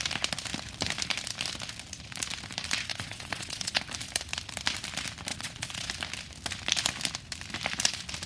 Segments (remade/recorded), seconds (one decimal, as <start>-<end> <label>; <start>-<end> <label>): 0.0-2.9 recorded; 2.9-3.8 remade; 3.8-5.3 recorded; 5.3-5.9 remade; 5.9-8.3 recorded